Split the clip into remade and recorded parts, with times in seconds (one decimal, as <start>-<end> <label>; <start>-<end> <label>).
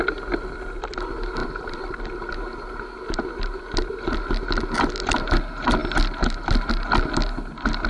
0.0-7.9 recorded